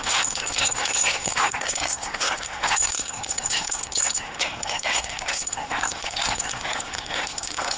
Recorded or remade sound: remade